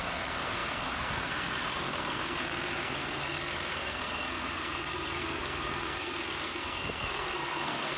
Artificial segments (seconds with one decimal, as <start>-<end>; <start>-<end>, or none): 0.0-8.0